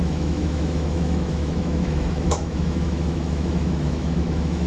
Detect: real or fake fake